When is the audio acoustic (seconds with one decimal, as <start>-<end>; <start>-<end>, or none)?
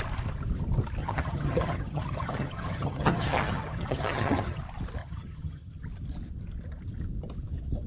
0.0-1.0; 4.6-5.0; 5.8-7.9